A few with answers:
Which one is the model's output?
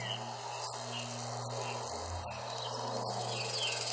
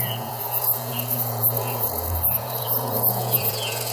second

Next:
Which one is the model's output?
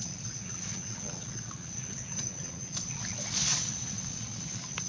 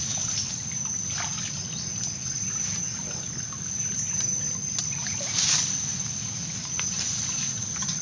first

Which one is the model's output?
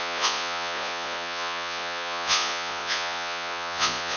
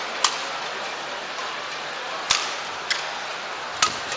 first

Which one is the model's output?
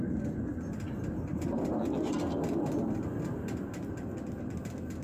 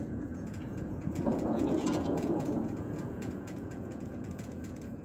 second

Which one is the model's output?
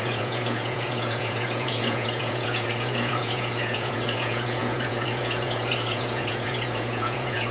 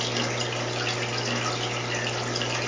first